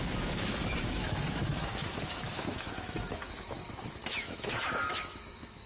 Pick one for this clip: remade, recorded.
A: remade